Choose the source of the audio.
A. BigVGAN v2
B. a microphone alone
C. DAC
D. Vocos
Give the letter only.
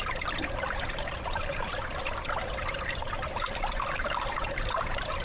A